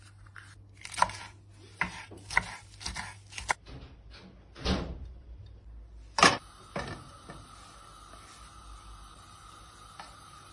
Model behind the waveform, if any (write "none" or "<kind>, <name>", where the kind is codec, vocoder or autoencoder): none